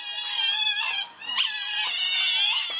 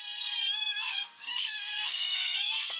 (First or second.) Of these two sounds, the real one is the first